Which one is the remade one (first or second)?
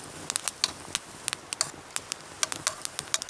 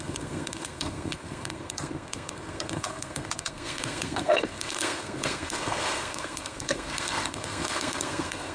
second